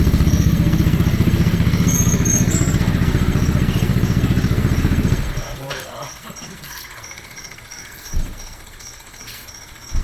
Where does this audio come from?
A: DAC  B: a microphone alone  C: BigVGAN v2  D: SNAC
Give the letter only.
D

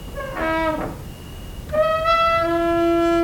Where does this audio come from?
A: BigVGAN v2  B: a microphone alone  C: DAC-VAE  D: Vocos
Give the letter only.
B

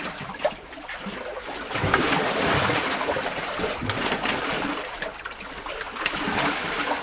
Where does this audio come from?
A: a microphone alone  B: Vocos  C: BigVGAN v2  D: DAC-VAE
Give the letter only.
C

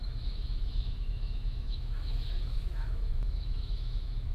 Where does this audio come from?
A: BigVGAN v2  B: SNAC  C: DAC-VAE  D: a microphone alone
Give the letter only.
C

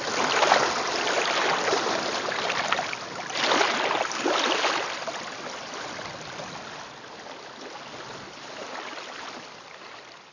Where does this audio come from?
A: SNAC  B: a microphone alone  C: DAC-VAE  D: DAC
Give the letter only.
B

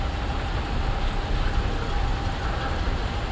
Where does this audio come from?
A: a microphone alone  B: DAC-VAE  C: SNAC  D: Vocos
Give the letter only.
A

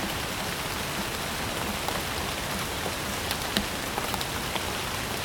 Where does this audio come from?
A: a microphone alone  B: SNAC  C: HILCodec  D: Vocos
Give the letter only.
A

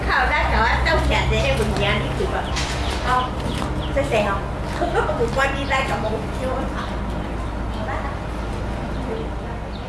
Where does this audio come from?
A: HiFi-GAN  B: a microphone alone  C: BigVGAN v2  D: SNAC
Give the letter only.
B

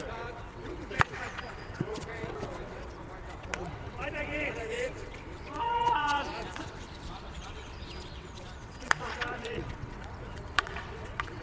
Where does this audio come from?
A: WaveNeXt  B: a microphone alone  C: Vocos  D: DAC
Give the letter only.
A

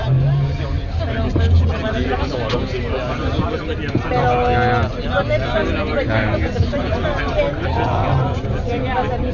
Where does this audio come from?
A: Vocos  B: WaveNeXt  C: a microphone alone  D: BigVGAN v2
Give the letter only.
C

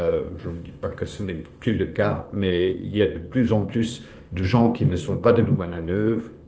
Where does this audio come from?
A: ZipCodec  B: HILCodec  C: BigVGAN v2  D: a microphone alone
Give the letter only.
A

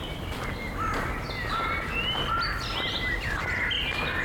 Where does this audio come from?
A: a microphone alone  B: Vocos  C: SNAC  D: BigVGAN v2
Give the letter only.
A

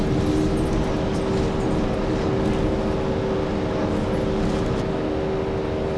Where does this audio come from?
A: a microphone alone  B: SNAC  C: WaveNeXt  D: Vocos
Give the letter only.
A